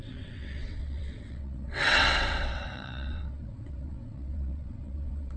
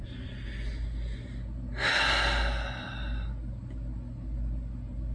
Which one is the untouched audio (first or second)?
second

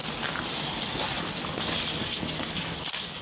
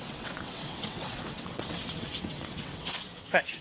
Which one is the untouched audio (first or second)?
first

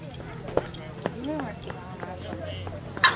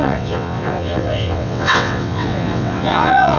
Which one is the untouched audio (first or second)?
first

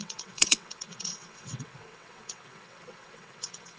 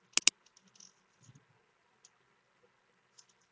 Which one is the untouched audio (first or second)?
second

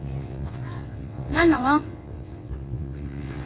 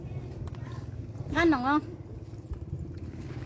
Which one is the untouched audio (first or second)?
second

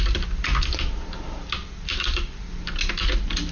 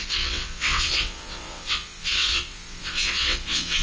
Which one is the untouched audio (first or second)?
first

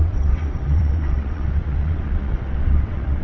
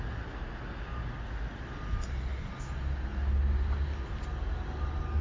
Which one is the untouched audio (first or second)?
second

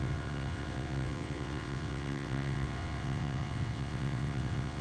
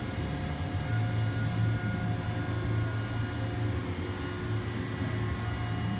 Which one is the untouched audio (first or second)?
second